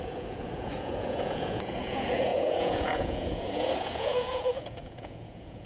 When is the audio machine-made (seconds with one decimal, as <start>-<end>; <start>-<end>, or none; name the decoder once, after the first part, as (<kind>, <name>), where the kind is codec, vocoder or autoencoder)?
0.0-5.7 (vocoder, Vocos)